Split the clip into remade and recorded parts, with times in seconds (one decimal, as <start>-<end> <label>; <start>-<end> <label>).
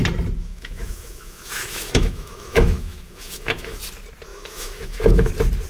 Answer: 0.0-0.4 recorded; 0.4-3.8 remade; 3.8-4.3 recorded; 4.3-5.3 remade; 5.3-5.7 recorded